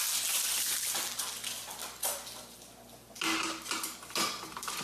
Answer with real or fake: real